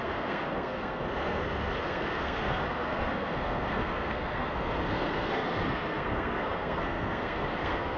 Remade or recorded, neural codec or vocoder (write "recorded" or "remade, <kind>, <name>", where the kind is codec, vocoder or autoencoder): remade, codec, SNAC